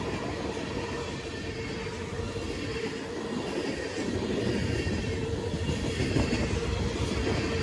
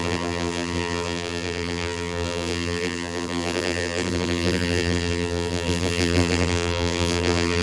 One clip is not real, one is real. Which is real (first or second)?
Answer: first